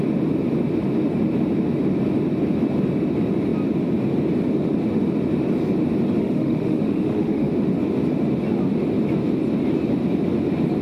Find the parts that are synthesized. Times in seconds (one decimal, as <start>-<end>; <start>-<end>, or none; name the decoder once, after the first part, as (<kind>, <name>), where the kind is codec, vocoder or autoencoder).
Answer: 6.2-7.5 (autoencoder, DAC-VAE)

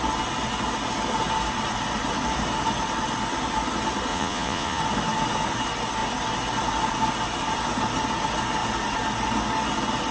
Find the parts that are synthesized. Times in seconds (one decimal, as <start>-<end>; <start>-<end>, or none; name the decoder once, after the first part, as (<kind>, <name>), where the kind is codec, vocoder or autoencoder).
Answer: 4.1-4.8 (vocoder, Vocos)

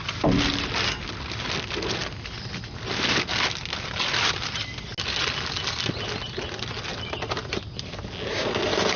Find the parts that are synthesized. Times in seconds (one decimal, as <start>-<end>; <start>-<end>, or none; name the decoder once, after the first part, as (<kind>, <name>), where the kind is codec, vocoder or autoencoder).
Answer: none

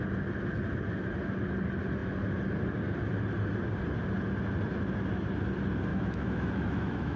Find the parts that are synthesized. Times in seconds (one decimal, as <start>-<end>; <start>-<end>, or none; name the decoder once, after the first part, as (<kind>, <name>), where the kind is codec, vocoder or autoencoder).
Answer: 5.9-7.2 (autoencoder, DAC-VAE)

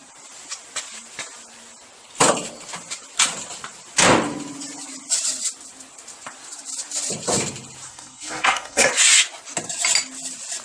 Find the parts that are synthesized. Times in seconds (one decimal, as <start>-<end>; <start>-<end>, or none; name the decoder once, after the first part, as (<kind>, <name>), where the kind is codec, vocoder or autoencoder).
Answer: 7.9-8.9 (codec, SNAC)